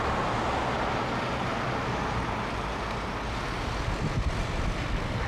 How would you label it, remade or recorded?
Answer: recorded